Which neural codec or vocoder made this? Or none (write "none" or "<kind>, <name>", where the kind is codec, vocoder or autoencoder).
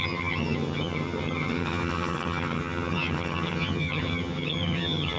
vocoder, HiFi-GAN